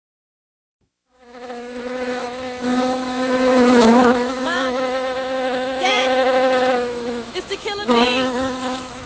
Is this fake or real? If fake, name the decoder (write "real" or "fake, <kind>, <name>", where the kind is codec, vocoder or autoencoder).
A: fake, autoencoder, DAC-VAE